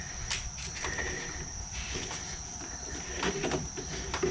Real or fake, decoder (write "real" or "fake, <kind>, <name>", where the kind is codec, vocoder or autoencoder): real